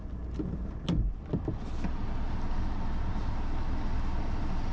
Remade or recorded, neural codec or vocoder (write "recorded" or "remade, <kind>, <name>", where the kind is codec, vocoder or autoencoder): recorded